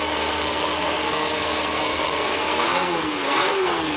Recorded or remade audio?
remade